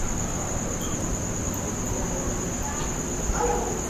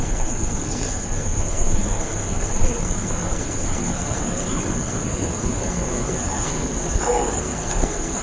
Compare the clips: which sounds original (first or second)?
first